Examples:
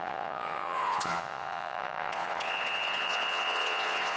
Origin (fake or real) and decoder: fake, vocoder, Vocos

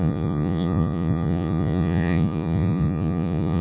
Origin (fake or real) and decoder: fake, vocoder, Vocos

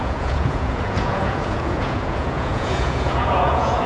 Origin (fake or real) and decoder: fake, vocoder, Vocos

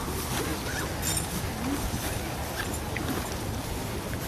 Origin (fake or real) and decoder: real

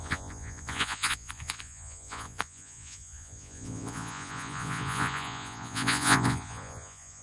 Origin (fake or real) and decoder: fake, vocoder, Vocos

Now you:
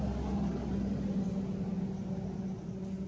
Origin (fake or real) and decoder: real